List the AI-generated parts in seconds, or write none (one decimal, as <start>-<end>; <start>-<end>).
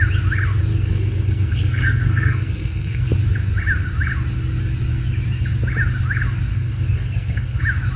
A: 0.7-3.1; 6.5-7.6